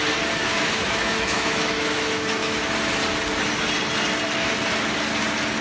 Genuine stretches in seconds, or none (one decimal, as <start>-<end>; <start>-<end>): 0.0-0.4; 2.6-5.6